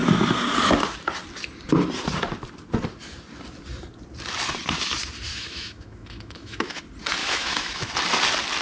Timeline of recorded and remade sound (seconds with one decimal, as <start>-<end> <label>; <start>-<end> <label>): 0.0-5.3 recorded; 5.3-6.8 remade; 6.8-7.2 recorded; 7.2-7.9 remade; 7.9-8.6 recorded